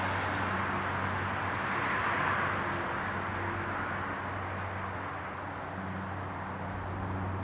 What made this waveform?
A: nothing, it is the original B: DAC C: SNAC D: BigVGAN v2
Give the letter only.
A